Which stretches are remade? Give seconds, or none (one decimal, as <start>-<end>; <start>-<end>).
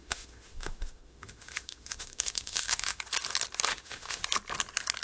0.0-3.0; 3.7-4.2